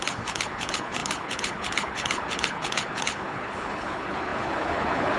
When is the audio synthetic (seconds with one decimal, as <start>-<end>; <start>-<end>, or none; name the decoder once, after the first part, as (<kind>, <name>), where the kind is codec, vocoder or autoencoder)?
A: 0.0-5.2 (codec, HILCodec)